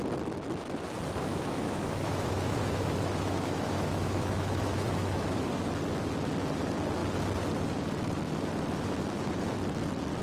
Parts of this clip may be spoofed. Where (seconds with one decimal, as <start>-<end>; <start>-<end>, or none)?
1.3-5.7